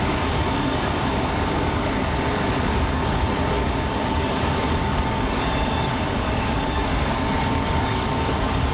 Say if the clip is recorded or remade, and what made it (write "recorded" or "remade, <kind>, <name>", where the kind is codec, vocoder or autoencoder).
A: remade, codec, DAC